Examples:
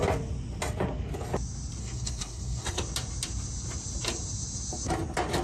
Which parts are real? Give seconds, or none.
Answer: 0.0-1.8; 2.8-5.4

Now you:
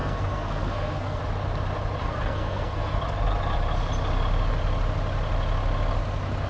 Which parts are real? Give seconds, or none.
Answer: 1.2-2.0; 3.0-6.5

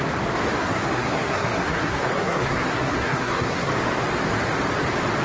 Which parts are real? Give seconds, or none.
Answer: 0.0-0.6; 3.7-5.2

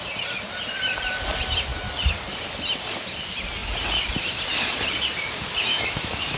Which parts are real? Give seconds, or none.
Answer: 0.0-5.6

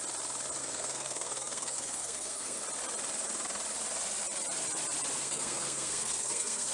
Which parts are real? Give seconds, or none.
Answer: 0.0-0.6; 2.6-5.2

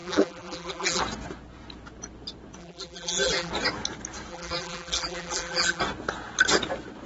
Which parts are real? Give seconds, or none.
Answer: 1.0-2.6; 3.5-4.3; 5.8-7.1

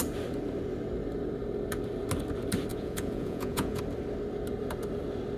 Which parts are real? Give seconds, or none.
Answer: 0.0-2.7; 3.8-5.4